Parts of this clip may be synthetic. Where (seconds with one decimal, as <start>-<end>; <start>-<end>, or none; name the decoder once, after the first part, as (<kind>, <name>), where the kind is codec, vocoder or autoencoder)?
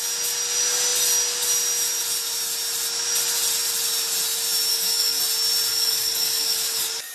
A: 4.7-5.2 (codec, DAC); 5.7-7.1